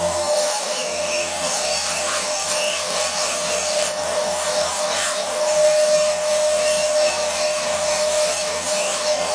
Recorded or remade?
remade